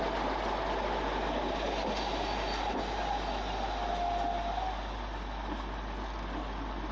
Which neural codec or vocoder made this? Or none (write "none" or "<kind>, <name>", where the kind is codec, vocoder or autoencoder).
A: none